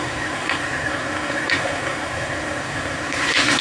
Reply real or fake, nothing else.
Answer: fake